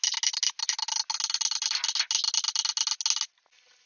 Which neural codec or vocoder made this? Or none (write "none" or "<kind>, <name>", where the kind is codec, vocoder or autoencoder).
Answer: none